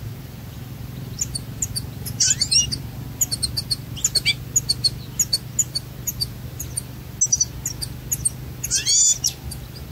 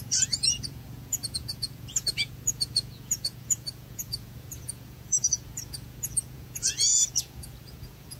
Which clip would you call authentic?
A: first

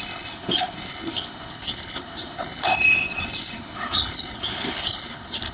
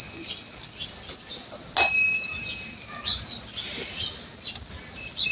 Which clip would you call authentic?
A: second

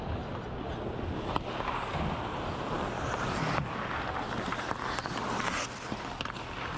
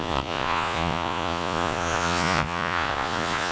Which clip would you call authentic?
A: first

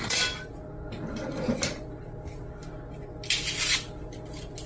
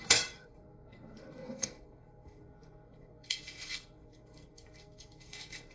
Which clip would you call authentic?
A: first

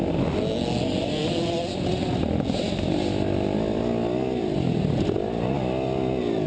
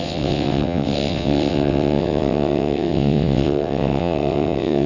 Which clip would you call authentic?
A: first